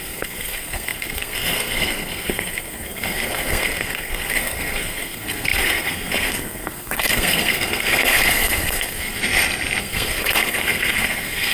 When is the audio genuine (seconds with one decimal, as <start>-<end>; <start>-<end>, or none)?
9.2-9.8